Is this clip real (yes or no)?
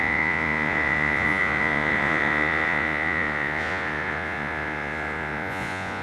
no